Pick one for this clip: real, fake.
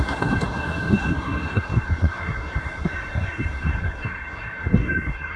fake